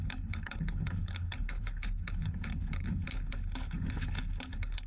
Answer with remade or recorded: remade